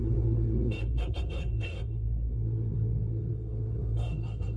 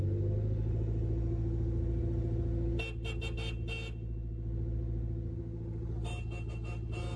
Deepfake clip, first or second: first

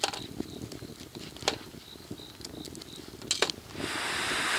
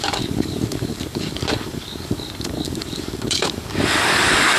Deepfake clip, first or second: second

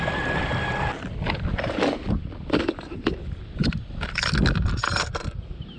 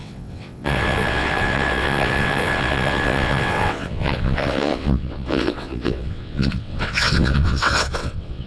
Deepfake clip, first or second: second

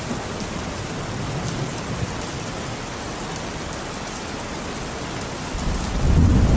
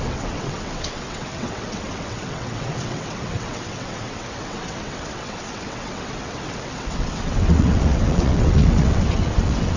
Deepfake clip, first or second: second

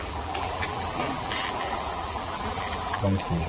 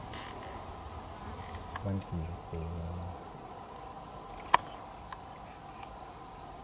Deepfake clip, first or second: first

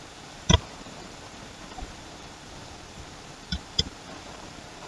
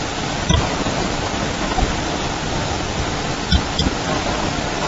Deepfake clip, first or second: first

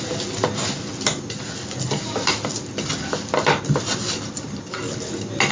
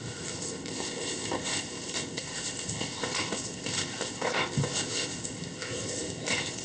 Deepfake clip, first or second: second